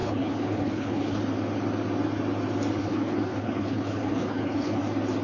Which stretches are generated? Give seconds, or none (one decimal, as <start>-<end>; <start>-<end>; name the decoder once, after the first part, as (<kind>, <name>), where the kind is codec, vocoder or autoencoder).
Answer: 0.0-1.2 (codec, HILCodec); 2.8-4.8